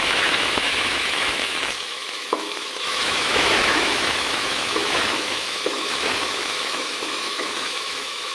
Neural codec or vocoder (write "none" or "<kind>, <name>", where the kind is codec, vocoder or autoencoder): autoencoder, DAC-VAE